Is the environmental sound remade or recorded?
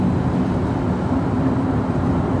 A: recorded